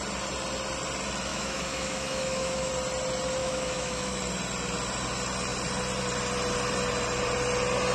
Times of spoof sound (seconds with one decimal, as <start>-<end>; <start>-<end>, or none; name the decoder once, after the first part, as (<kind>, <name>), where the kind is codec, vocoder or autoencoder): 1.3-2.7 (autoencoder, DAC-VAE); 3.4-4.2